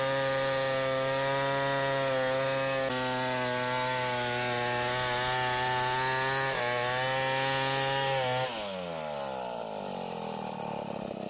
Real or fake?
real